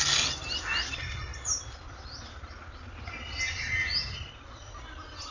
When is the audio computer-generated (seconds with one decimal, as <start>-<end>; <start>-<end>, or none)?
none